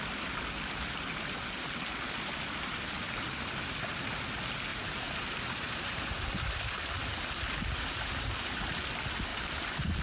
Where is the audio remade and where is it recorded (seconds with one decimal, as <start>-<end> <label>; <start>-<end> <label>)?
0.0-4.7 recorded; 4.7-6.8 remade; 6.8-9.3 recorded; 9.3-10.0 remade